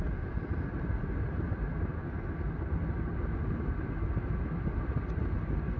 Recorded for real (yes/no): yes